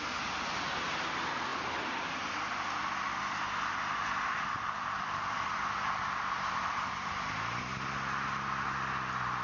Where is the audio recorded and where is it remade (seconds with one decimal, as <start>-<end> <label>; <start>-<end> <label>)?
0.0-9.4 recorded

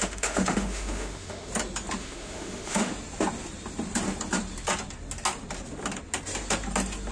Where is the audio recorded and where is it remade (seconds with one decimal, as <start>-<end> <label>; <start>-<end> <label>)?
0.0-1.5 remade; 1.5-2.0 recorded; 2.0-2.9 remade; 2.9-7.1 recorded

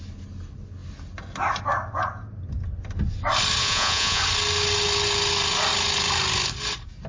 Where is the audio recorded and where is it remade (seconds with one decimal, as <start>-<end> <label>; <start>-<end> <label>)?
0.0-3.6 recorded; 3.6-4.2 remade; 4.2-7.1 recorded